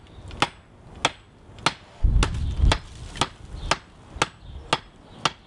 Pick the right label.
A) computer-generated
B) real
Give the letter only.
B